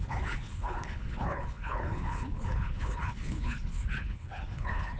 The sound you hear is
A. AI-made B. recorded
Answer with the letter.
A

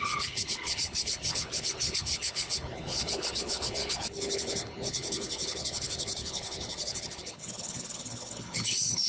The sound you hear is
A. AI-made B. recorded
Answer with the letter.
A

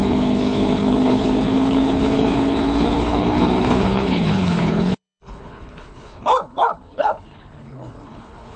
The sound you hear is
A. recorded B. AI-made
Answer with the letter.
B